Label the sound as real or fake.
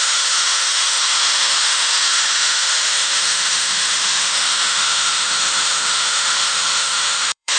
fake